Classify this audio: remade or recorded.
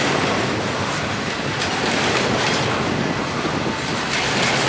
recorded